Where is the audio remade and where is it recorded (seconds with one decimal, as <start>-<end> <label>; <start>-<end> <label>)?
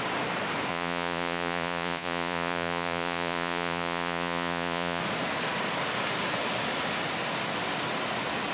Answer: 0.0-0.7 recorded; 0.7-5.0 remade; 5.0-8.5 recorded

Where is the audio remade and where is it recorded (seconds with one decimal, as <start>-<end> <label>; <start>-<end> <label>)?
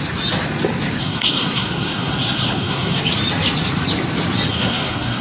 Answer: 0.0-1.0 recorded; 1.0-3.0 remade; 3.0-4.5 recorded; 4.5-5.2 remade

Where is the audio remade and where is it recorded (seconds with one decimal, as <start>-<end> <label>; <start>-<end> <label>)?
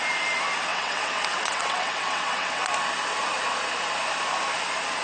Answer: 0.0-0.7 recorded; 0.7-2.7 remade; 2.7-5.0 recorded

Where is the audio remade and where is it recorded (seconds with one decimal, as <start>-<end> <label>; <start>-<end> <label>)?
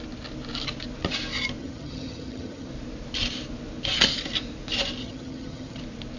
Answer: 0.0-1.6 recorded; 1.6-2.7 remade; 2.7-5.0 recorded; 5.0-5.8 remade; 5.8-6.2 recorded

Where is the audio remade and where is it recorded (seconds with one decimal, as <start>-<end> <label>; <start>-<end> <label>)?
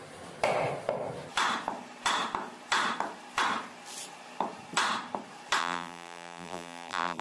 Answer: 0.0-5.6 recorded; 5.6-7.2 remade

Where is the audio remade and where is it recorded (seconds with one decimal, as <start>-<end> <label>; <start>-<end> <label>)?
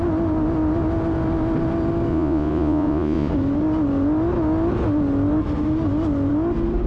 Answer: 0.0-2.1 recorded; 2.1-3.3 remade; 3.3-6.9 recorded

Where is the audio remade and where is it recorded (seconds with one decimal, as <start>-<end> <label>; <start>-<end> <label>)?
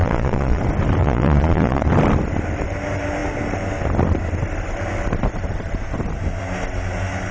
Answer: 0.0-0.6 remade; 0.6-1.0 recorded; 1.0-1.9 remade; 1.9-7.3 recorded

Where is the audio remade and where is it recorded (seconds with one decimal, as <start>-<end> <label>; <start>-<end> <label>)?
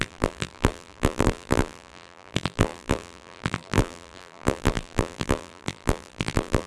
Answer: 0.0-6.7 remade